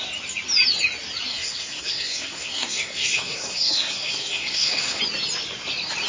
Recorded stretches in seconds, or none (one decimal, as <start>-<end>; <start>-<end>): 0.0-1.3; 5.0-6.1

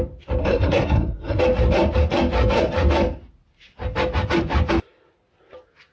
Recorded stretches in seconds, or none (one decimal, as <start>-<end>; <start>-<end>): 0.0-0.4; 1.4-5.9

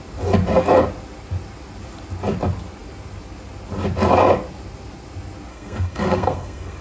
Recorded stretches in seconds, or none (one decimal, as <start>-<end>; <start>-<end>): 0.0-5.5

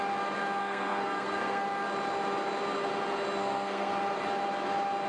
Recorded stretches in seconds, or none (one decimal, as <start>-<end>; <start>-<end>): 0.0-0.6; 1.6-3.4; 3.9-5.1